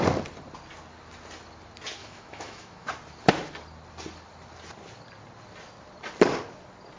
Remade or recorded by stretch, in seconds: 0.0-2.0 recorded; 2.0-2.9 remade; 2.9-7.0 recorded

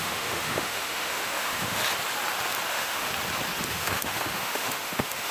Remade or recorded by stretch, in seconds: 0.0-1.8 remade; 1.8-2.7 recorded; 2.7-3.1 remade; 3.1-3.7 recorded; 3.7-5.3 remade

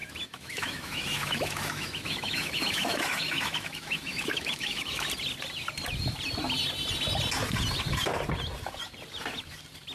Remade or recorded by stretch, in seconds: 0.0-5.1 remade; 5.1-9.9 recorded

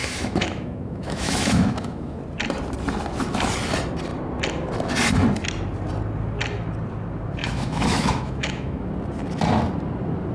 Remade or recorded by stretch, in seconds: 0.0-2.2 remade; 2.2-7.4 recorded; 7.4-8.9 remade; 8.9-10.3 recorded

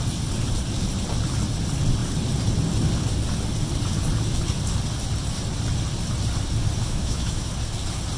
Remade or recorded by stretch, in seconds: 0.0-6.8 recorded; 6.8-7.5 remade; 7.5-8.2 recorded

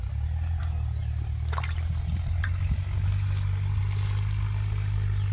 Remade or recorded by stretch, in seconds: 0.0-5.3 recorded

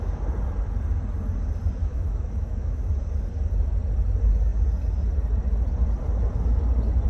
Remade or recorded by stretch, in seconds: 0.0-1.8 recorded; 1.8-2.9 remade; 2.9-7.1 recorded

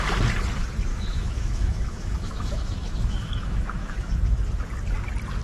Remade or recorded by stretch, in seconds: 0.0-0.9 recorded; 0.9-4.1 remade; 4.1-5.4 recorded